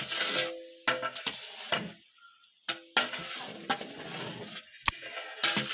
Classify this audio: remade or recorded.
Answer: recorded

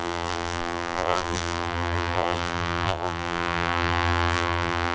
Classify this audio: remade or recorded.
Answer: remade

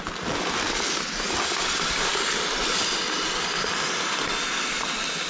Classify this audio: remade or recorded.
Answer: recorded